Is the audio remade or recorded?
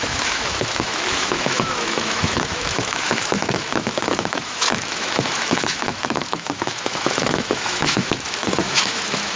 remade